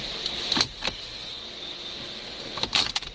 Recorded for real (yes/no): yes